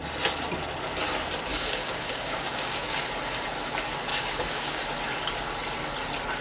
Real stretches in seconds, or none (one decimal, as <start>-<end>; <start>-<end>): 0.0-1.5; 3.0-4.1; 4.8-6.4

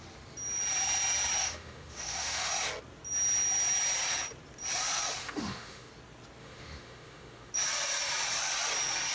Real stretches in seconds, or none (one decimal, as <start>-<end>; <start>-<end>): 0.0-1.4; 2.5-5.2; 5.9-6.4; 7.5-9.1

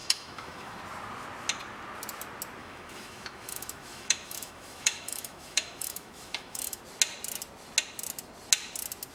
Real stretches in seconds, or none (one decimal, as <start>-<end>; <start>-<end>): 0.8-2.6; 6.8-9.1

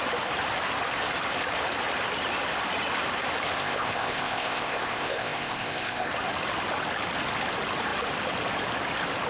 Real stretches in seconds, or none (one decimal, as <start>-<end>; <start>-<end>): 0.0-3.6; 6.1-9.3

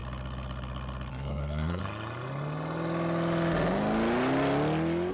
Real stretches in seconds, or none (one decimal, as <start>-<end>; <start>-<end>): 0.0-1.1; 1.8-5.1

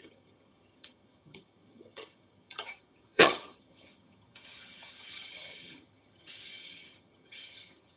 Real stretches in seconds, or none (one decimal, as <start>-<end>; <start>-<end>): none

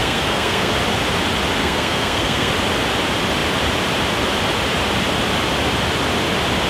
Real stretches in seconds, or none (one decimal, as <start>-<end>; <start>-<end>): 0.7-1.6; 2.5-6.7